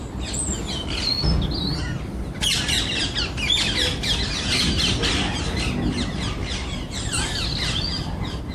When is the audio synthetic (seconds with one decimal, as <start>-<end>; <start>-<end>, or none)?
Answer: 6.4-7.4